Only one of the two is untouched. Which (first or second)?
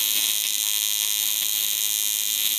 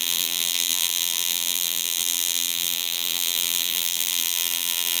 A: first